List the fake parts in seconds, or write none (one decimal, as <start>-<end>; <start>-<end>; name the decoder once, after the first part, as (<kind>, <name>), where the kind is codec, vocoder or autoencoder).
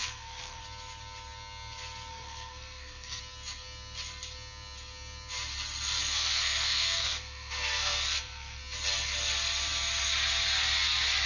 0.0-0.6 (codec, SNAC); 2.1-3.2; 6.0-8.6